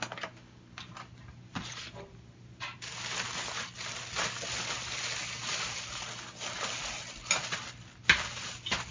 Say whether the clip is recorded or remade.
recorded